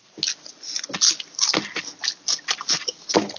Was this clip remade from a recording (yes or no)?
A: no